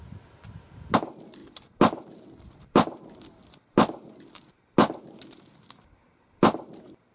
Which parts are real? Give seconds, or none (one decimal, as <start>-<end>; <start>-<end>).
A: 0.0-7.1